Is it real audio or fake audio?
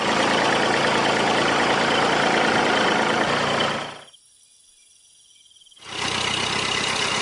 real